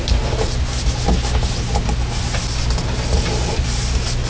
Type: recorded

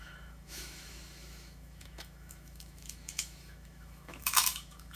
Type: remade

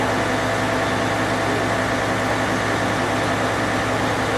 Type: recorded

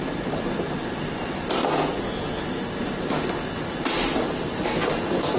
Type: recorded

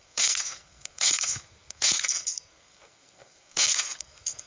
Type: remade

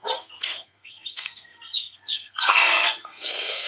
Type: remade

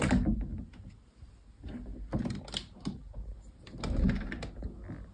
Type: recorded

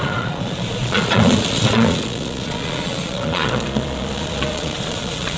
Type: remade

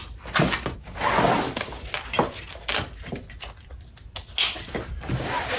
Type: recorded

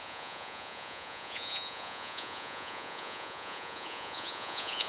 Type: remade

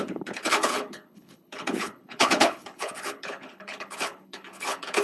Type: remade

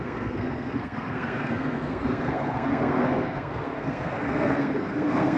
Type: remade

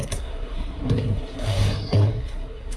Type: remade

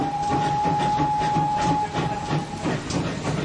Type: recorded